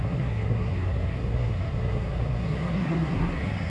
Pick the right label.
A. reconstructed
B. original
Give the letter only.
A